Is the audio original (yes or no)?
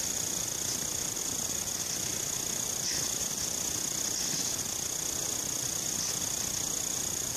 yes